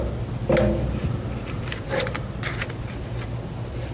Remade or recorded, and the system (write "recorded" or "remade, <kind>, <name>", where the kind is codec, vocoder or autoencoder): recorded